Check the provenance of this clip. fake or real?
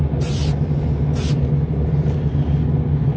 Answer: real